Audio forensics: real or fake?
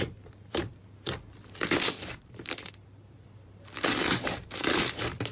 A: fake